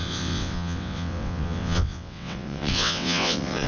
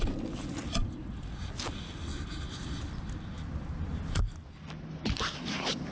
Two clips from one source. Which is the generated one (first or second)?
first